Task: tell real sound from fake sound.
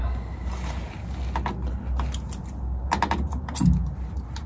real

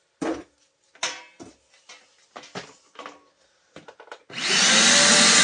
real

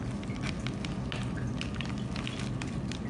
real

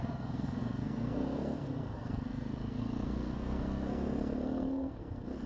fake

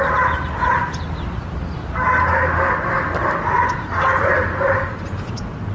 real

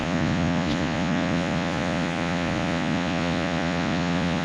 fake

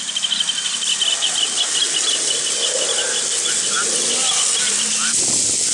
real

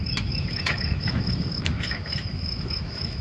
fake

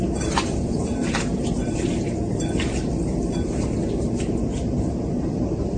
fake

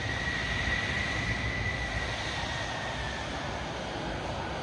real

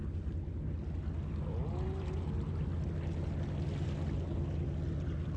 real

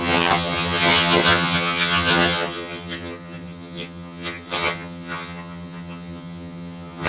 fake